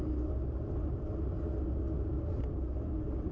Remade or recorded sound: recorded